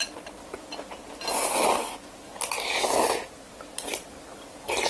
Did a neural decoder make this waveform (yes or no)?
no